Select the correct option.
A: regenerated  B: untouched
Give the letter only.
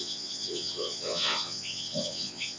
A